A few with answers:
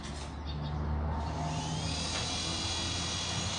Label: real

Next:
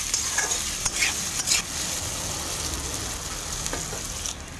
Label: real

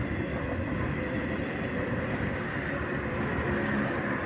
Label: real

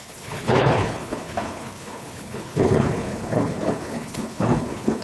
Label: fake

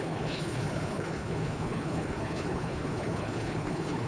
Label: fake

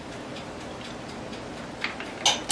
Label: real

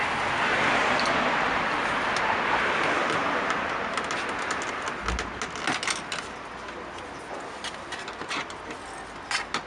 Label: real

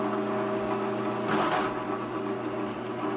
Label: real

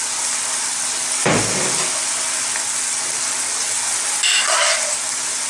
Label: real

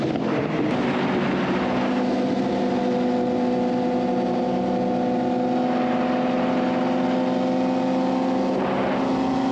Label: real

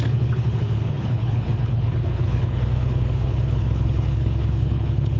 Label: fake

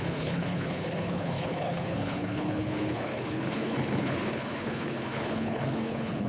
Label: fake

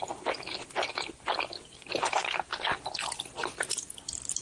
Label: real